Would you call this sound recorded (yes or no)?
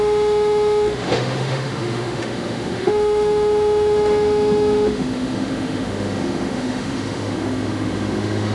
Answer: no